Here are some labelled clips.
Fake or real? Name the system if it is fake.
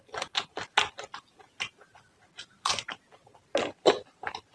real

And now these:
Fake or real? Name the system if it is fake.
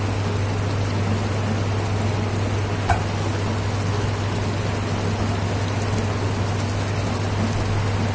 real